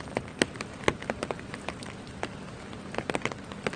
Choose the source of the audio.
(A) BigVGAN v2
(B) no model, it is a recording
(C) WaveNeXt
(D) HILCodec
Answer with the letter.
B